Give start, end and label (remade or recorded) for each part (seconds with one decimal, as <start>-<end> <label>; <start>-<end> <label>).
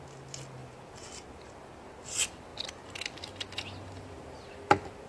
0.0-5.1 recorded